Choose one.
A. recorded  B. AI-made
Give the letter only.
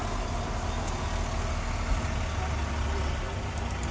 A